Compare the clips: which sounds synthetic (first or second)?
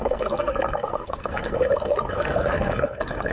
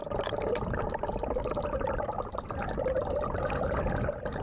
first